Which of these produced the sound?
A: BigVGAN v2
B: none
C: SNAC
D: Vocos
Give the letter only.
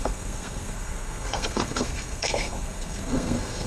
C